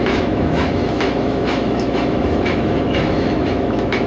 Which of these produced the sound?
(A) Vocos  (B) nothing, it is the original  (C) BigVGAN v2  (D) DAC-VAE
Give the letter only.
D